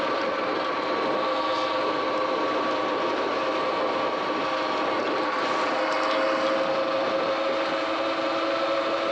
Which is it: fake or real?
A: real